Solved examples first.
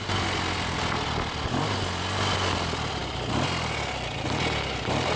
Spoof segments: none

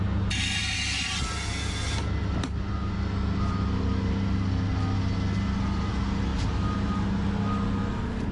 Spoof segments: none